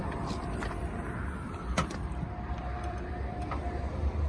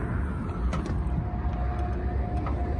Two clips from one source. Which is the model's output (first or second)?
first